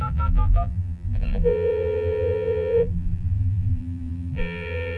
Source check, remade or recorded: remade